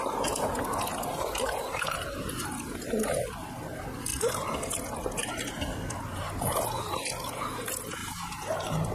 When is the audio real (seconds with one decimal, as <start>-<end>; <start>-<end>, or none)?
0.0-1.1; 2.1-8.0